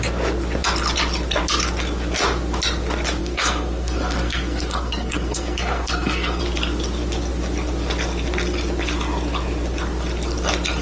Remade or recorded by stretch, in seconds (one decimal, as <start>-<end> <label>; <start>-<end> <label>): 0.0-3.2 recorded; 3.2-6.4 remade; 6.4-10.8 recorded